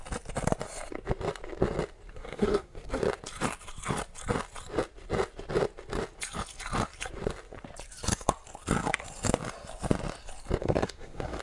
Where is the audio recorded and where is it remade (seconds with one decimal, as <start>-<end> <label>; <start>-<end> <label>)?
0.0-2.1 recorded; 2.1-3.0 remade; 3.0-10.6 recorded; 10.6-11.4 remade